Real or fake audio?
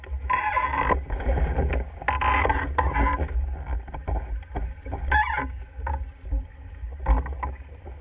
real